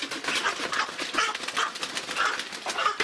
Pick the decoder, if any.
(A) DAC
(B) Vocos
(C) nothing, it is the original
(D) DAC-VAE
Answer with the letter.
C